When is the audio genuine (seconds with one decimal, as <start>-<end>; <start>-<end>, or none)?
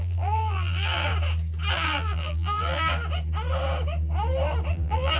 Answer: 1.1-1.7; 2.9-4.7